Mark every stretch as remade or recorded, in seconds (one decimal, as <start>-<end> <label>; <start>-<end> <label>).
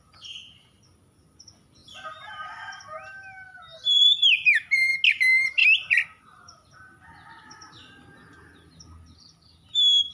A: 0.0-1.8 recorded; 1.8-2.6 remade; 2.6-3.7 recorded; 3.7-4.5 remade; 4.5-10.1 recorded